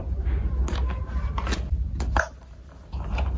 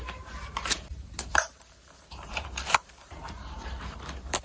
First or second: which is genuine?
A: first